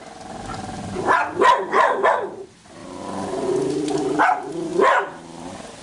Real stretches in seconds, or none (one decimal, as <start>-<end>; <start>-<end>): 0.0-5.8